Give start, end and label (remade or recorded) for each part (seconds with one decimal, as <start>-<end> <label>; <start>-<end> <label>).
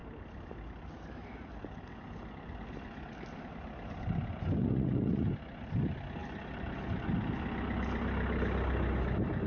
0.0-4.6 recorded; 4.6-5.3 remade; 5.3-9.5 recorded